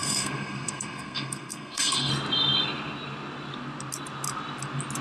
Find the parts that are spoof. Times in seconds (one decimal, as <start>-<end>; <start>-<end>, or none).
0.0-2.1